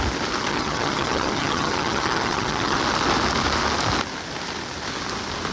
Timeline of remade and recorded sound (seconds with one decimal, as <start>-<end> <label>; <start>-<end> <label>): 0.0-0.5 recorded; 0.5-2.8 remade; 2.8-5.5 recorded